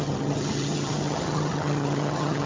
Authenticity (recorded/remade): remade